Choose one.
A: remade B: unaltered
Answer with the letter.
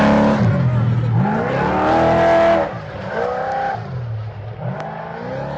B